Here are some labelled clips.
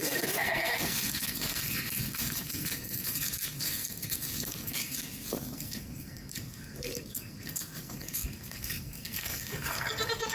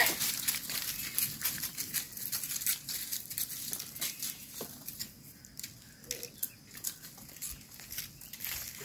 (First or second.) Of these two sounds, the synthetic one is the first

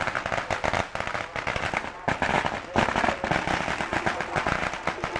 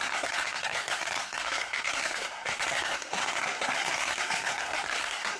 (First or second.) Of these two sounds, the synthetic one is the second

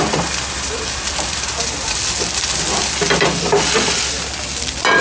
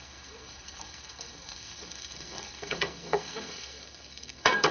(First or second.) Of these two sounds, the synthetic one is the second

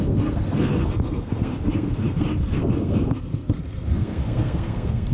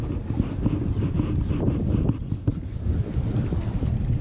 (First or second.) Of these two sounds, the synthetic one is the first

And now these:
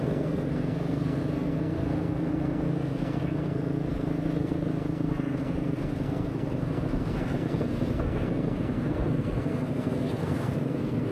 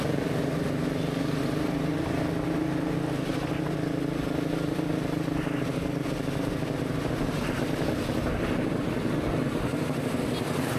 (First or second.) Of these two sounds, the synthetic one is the first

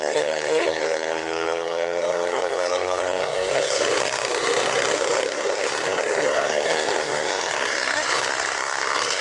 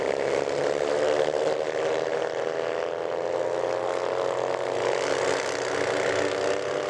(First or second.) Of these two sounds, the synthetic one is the first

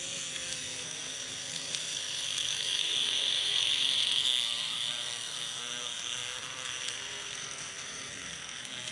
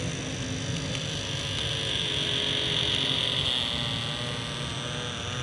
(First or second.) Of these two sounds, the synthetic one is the first